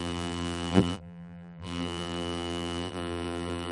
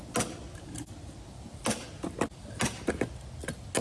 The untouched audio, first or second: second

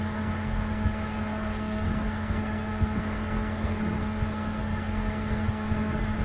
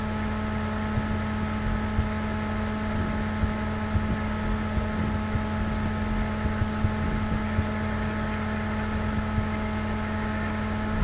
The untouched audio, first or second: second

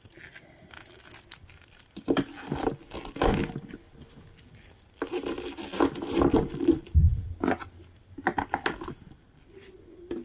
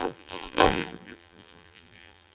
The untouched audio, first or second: first